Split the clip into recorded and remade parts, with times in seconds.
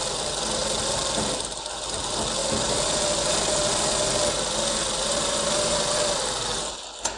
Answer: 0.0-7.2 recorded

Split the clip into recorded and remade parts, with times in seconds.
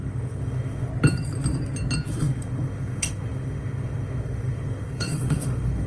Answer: 0.0-0.9 remade; 0.9-2.1 recorded; 2.1-5.9 remade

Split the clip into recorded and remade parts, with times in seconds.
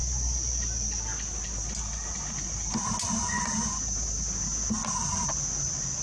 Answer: 0.0-6.0 recorded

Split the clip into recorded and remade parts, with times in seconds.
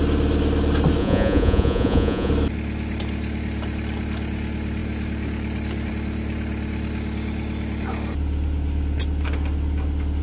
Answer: 0.0-1.0 recorded; 1.0-2.3 remade; 2.3-10.2 recorded